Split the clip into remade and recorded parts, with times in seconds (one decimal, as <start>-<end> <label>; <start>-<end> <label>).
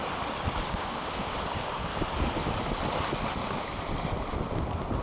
0.0-0.7 recorded; 0.7-1.9 remade; 1.9-5.0 recorded